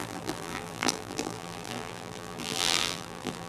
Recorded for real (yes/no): no